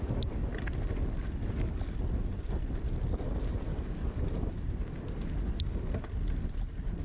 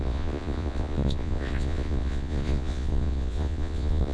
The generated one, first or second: second